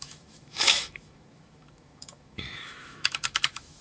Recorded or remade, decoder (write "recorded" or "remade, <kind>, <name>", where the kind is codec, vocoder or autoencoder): remade, autoencoder, DAC-VAE